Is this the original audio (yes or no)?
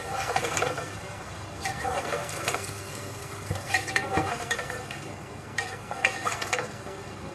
no